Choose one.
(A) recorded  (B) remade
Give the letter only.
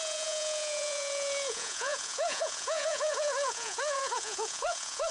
B